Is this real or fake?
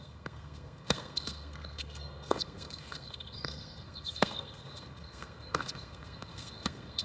fake